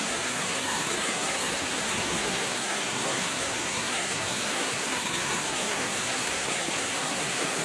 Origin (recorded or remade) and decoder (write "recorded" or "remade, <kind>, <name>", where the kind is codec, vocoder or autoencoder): remade, codec, SNAC